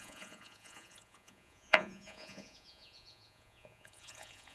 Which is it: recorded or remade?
remade